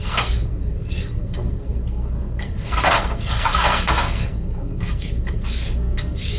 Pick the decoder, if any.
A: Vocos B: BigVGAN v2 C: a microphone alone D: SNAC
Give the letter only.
D